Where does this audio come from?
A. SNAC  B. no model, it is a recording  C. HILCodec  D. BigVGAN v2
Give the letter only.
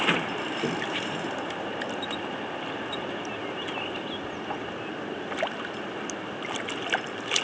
B